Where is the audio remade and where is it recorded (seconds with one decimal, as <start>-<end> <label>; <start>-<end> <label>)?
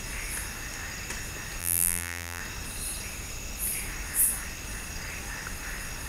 0.0-1.6 recorded; 1.6-2.4 remade; 2.4-6.1 recorded